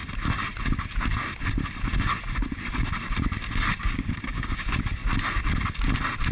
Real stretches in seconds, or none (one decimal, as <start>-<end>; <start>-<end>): 0.0-3.8; 5.0-6.3